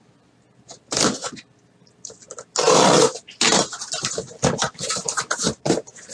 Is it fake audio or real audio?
real